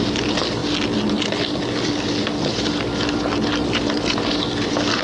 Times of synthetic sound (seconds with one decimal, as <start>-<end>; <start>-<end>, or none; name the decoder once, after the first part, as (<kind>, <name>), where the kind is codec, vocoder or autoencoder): 0.0-0.6 (vocoder, BigVGAN v2); 2.5-5.0